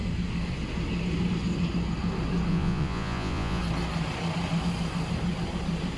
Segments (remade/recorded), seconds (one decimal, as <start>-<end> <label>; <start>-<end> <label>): 0.0-2.5 recorded; 2.5-3.6 remade; 3.6-6.0 recorded